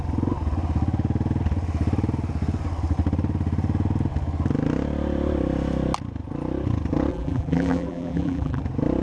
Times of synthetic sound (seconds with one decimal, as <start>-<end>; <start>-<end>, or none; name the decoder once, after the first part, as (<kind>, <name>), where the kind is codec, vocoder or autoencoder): 7.1-8.6 (vocoder, BigVGAN v2)